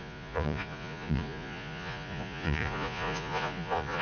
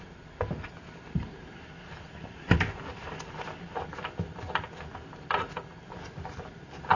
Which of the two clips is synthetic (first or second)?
first